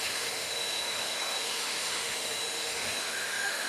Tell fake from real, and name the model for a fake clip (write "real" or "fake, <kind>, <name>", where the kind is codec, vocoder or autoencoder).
fake, autoencoder, DAC-VAE